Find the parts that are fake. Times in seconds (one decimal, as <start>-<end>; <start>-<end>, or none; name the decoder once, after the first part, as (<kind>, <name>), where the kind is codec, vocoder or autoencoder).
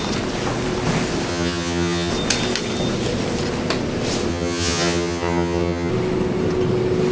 1.3-2.1 (vocoder, HiFi-GAN); 4.3-5.9